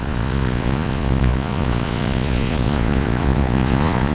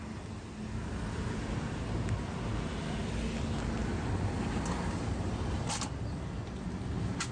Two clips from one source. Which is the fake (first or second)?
first